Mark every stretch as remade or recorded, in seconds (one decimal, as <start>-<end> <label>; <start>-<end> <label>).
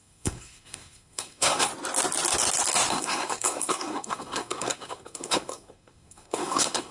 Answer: 0.0-1.7 remade; 1.7-2.9 recorded; 2.9-6.9 remade